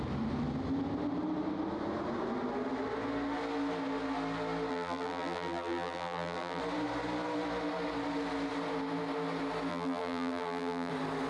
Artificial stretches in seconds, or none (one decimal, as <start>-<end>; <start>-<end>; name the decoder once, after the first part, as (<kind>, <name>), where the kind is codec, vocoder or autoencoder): 4.7-6.6 (vocoder, BigVGAN v2); 9.7-10.9